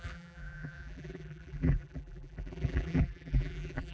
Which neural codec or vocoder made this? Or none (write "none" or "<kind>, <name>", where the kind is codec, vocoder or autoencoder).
vocoder, BigVGAN v2